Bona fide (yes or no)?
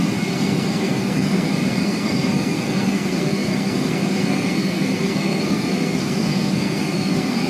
no